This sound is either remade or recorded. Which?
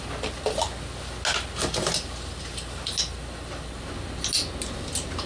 recorded